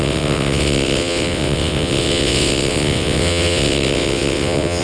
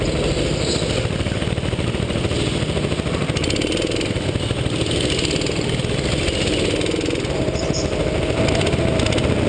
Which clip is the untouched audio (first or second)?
second